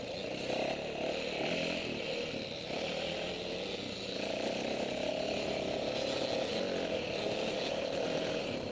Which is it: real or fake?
real